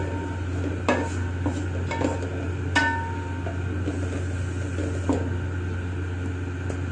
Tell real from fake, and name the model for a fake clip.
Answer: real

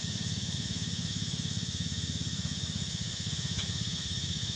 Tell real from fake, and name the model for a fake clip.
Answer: fake, autoencoder, DAC-VAE